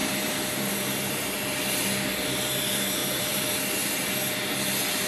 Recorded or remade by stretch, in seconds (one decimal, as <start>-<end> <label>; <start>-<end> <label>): 0.0-1.2 remade; 1.2-3.0 recorded; 3.0-3.6 remade; 3.6-5.1 recorded